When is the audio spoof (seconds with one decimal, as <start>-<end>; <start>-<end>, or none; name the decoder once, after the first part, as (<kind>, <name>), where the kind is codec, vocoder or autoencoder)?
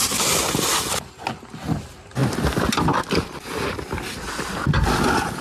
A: none